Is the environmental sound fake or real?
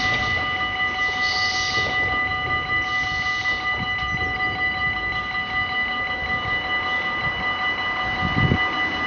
real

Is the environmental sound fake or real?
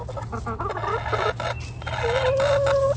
real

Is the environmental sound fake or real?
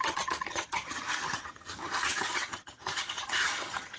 fake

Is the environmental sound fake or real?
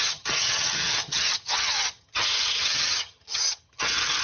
fake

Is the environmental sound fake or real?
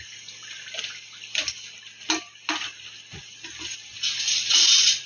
real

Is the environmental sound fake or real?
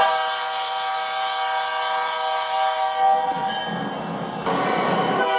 real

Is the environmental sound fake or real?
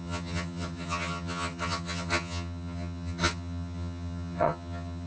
fake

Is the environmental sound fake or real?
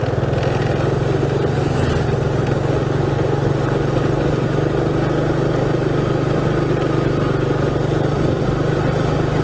real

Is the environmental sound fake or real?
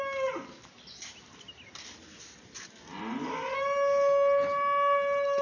real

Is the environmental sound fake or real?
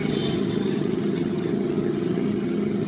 fake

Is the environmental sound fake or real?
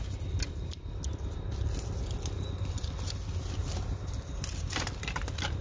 real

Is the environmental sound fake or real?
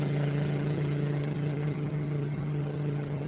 fake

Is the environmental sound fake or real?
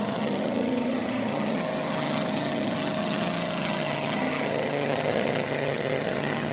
fake